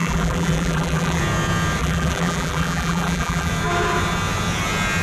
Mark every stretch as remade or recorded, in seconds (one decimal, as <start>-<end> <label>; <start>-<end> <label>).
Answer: 0.0-1.2 remade; 1.2-1.8 recorded; 1.8-3.5 remade; 3.5-5.0 recorded